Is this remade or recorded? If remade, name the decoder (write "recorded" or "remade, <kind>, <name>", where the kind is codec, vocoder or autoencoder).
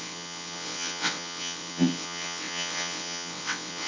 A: remade, vocoder, WaveNeXt